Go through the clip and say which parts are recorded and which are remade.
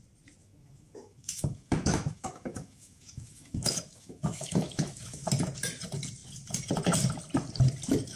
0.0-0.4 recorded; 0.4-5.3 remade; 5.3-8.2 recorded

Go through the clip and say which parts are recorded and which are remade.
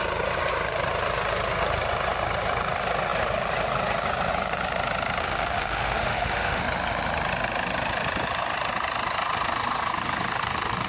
0.0-5.2 recorded; 5.2-6.6 remade; 6.6-10.9 recorded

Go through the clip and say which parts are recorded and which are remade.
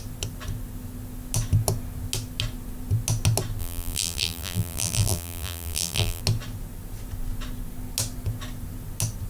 0.0-3.6 recorded; 3.6-6.2 remade; 6.2-9.3 recorded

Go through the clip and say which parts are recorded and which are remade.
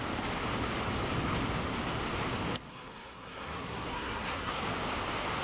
0.0-2.7 recorded; 2.7-4.6 remade; 4.6-5.4 recorded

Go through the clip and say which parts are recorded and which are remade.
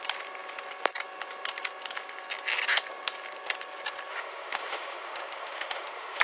0.0-4.1 recorded; 4.1-6.2 remade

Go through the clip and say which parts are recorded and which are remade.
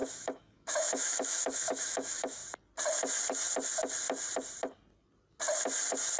0.0-2.4 remade; 2.4-6.2 recorded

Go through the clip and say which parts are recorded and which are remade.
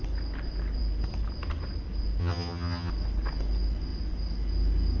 0.0-2.2 recorded; 2.2-2.9 remade; 2.9-5.0 recorded